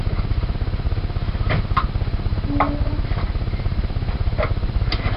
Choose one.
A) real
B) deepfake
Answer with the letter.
A